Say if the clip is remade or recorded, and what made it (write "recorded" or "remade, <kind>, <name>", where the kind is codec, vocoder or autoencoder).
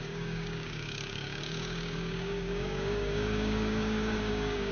remade, codec, DAC